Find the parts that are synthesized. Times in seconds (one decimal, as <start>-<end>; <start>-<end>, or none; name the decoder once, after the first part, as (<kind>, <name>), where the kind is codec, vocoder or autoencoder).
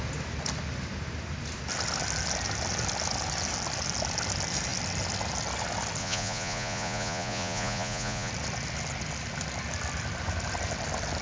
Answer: 6.0-8.3 (vocoder, Vocos)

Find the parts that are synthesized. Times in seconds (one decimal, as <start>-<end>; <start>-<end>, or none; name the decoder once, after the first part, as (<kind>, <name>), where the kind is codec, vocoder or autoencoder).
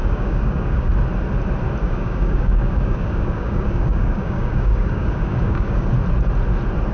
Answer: 0.0-0.9 (codec, DAC); 1.8-5.9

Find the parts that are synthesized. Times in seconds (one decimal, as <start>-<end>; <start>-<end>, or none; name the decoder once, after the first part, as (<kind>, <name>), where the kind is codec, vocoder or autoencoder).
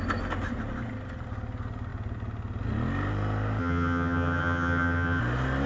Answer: 3.6-5.2 (vocoder, HiFi-GAN)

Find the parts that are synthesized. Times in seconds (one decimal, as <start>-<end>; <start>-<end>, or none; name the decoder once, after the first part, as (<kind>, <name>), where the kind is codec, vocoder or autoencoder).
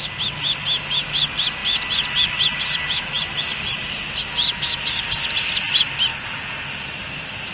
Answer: none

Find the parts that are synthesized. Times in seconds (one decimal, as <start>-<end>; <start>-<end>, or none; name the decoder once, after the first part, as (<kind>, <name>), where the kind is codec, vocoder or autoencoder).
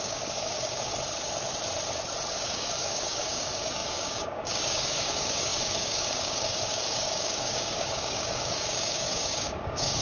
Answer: 0.0-0.9 (codec, DAC); 2.3-10.0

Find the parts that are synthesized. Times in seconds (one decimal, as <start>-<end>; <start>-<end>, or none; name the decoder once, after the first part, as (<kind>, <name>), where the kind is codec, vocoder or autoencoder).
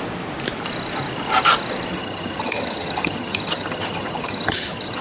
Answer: 1.9-5.0 (vocoder, HiFi-GAN)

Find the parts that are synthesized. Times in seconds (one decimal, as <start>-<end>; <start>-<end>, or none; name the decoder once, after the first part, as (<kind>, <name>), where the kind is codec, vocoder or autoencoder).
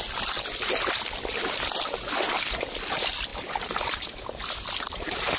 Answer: none